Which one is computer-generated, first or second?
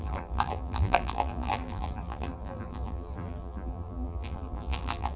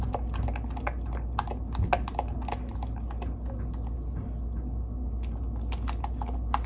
first